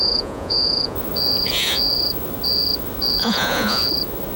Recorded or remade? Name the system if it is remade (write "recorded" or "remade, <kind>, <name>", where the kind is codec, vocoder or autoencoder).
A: remade, vocoder, Vocos